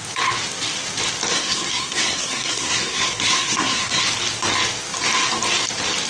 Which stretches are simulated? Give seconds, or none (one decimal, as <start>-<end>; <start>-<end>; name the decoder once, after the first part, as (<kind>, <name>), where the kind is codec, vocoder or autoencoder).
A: 1.3-4.0 (codec, SNAC)